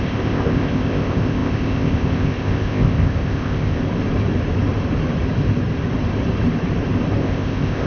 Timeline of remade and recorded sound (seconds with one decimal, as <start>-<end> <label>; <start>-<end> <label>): 0.0-3.8 remade; 3.8-7.2 recorded; 7.2-7.9 remade